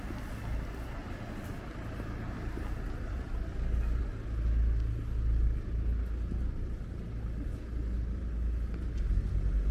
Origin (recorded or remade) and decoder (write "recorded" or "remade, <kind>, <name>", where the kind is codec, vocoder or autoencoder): recorded